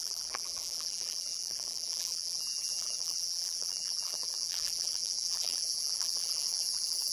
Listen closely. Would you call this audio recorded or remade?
remade